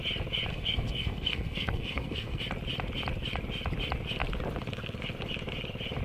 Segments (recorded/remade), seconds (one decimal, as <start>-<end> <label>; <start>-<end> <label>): 0.0-0.5 recorded; 0.5-2.4 remade; 2.4-6.0 recorded